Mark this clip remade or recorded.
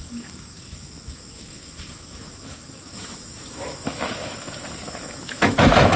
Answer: remade